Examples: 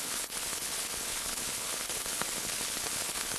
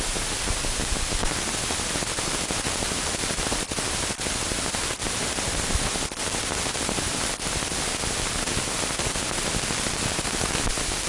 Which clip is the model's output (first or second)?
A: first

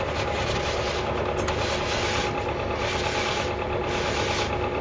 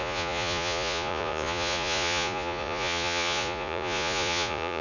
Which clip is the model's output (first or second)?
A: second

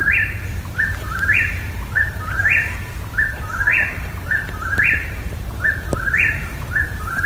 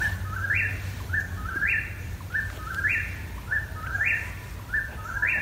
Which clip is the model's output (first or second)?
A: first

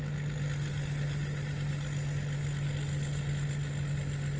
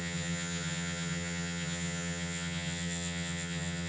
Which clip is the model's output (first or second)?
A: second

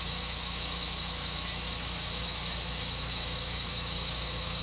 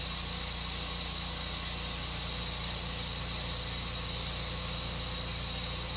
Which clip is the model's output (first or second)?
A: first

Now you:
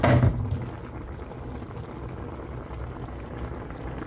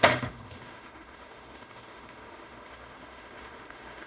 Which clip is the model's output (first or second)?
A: second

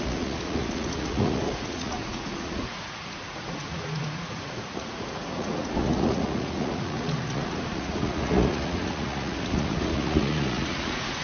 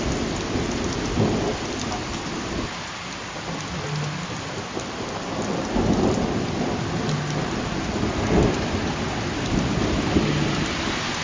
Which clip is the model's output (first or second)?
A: first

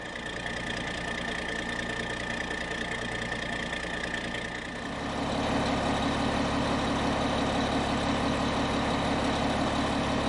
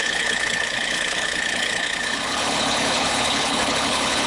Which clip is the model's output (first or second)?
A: second